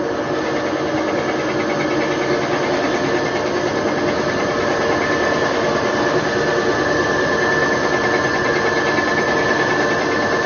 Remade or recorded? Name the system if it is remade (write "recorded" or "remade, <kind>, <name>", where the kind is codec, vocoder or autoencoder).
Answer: recorded